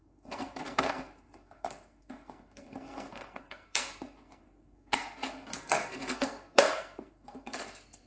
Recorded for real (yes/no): no